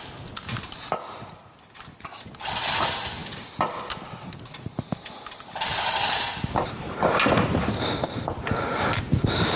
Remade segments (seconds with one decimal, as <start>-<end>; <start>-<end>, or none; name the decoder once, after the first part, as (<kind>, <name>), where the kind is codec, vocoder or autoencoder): none

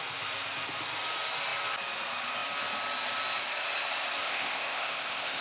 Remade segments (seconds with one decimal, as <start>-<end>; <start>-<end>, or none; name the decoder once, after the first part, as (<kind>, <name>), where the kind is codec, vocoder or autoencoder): 4.2-5.4 (codec, ZipCodec)

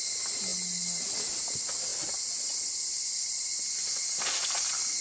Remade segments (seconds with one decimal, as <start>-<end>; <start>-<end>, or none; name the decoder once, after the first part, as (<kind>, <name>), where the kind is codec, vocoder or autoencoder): none

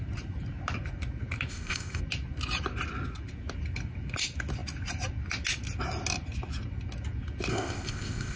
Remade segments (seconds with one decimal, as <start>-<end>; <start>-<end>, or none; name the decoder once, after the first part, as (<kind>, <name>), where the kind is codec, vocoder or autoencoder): 1.5-2.0 (codec, ZipCodec); 7.5-8.4

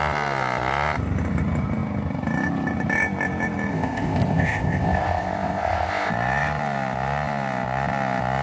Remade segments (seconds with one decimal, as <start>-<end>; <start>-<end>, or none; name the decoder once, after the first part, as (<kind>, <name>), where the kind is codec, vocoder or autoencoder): 3.7-6.1 (codec, ZipCodec)